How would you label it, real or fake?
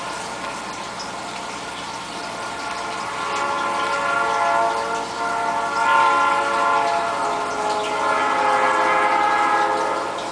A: real